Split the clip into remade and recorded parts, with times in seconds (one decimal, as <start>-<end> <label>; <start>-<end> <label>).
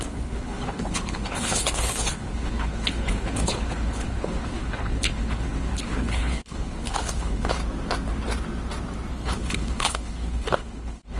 0.0-7.6 remade; 7.6-9.1 recorded; 9.1-11.2 remade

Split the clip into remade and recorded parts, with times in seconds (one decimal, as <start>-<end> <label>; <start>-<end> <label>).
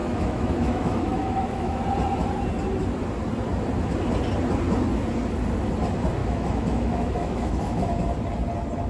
0.0-1.8 remade; 1.8-6.2 recorded; 6.2-8.0 remade; 8.0-8.9 recorded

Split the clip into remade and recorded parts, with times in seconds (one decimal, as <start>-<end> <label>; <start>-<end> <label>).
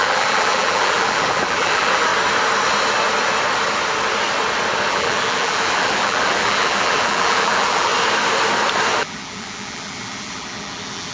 0.0-2.1 remade; 2.1-4.9 recorded; 4.9-7.9 remade; 7.9-9.0 recorded; 9.0-11.1 remade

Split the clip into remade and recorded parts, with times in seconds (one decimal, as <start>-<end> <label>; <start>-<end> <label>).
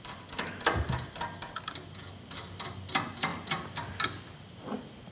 0.0-5.1 recorded